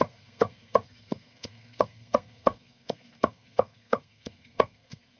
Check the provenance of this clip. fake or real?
fake